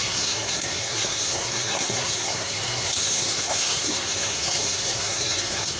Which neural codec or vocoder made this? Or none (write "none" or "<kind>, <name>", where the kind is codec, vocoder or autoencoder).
codec, SNAC